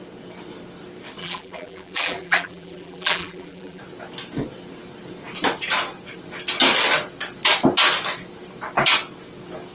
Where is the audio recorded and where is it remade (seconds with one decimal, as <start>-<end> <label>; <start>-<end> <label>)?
0.0-1.2 recorded; 1.2-3.8 remade; 3.8-9.7 recorded

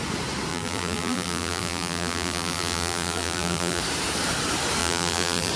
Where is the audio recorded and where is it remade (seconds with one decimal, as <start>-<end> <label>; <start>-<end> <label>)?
0.0-0.5 recorded; 0.5-3.8 remade; 3.8-4.8 recorded; 4.8-5.5 remade

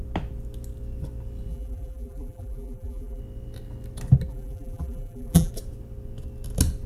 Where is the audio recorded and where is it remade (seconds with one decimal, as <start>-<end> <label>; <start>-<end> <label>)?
0.0-1.5 recorded; 1.5-3.2 remade; 3.2-4.3 recorded; 4.3-5.5 remade; 5.5-6.9 recorded